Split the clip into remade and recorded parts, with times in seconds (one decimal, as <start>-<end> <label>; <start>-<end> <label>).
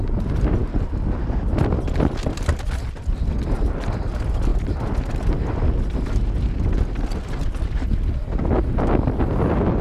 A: 0.0-9.8 recorded